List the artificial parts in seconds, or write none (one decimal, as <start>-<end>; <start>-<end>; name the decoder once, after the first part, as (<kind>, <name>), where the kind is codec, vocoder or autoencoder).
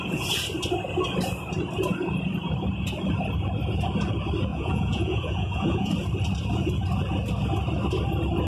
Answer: 4.5-5.9 (vocoder, Vocos)